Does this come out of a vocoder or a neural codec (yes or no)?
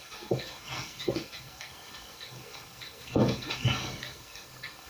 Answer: yes